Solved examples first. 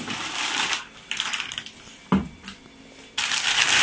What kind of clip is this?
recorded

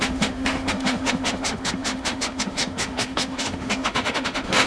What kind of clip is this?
remade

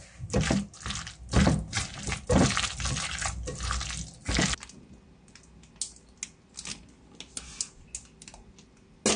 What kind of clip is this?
recorded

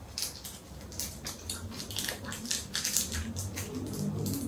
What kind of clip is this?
recorded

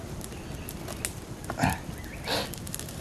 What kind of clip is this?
recorded